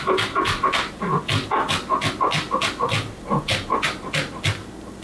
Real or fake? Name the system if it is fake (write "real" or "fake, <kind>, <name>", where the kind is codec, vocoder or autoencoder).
real